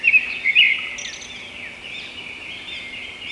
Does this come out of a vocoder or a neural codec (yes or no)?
no